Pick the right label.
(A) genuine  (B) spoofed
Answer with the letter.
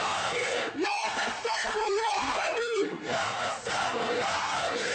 B